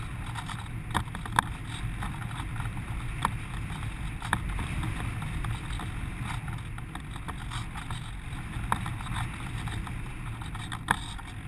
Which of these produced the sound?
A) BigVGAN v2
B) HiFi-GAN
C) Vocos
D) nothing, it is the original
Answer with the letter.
D